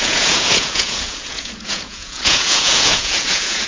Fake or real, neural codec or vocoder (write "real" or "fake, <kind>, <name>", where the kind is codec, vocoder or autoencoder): fake, vocoder, Vocos